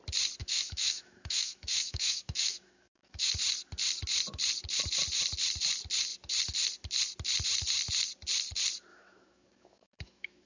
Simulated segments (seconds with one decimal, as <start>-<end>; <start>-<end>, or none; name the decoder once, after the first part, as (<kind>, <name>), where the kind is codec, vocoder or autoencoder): 0.4-3.3 (autoencoder, DAC-VAE); 8.9-10.5